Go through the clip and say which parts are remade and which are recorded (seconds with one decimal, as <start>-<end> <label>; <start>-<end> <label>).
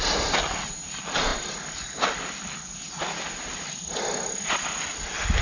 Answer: 0.0-5.4 recorded